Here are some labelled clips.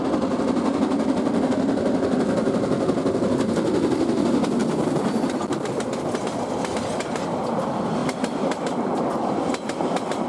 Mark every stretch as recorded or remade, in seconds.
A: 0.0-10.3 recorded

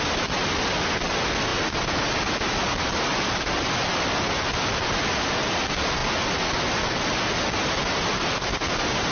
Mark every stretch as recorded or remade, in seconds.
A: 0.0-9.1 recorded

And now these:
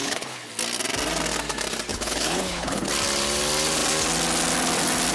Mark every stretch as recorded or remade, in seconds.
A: 0.0-0.5 remade; 0.5-1.9 recorded; 1.9-2.9 remade; 2.9-5.1 recorded

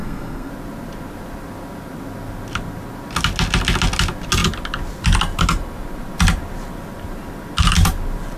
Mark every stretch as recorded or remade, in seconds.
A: 0.0-0.5 remade; 0.5-8.4 recorded